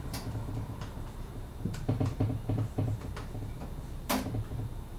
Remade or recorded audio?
remade